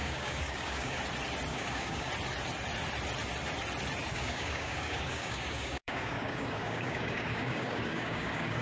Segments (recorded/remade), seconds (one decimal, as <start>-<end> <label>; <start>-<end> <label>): 0.0-1.0 remade; 1.0-1.5 recorded; 1.5-2.1 remade; 2.1-4.1 recorded; 4.1-8.6 remade